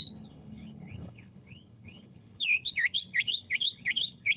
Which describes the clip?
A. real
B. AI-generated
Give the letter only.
B